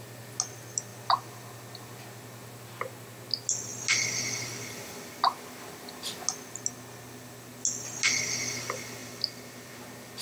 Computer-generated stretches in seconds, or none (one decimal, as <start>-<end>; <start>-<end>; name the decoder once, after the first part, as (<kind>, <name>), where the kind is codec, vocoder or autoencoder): none